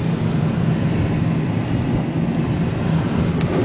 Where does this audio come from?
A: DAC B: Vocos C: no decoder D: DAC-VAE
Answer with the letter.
C